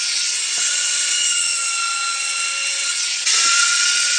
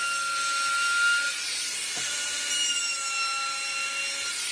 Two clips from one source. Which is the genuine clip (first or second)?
second